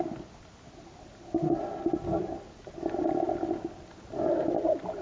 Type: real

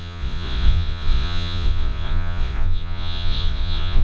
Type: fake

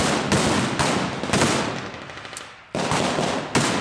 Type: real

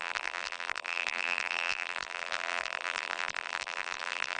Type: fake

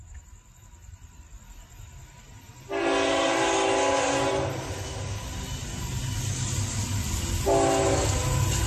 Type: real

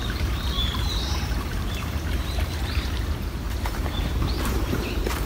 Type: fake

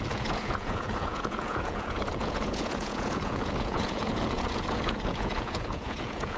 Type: fake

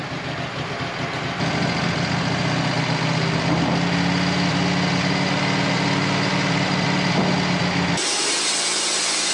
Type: real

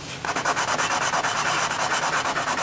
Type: real